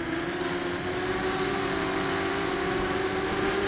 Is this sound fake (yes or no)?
no